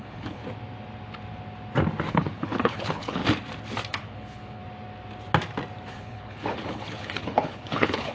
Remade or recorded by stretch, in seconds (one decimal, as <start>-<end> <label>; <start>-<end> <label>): 0.0-0.4 remade; 0.4-2.1 recorded; 2.1-3.2 remade; 3.2-3.9 recorded; 3.9-4.6 remade; 4.6-5.9 recorded; 5.9-8.1 remade